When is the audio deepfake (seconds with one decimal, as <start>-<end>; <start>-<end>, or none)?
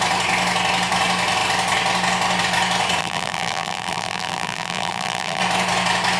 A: 3.0-5.4